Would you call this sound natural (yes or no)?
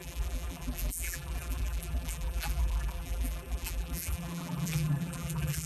no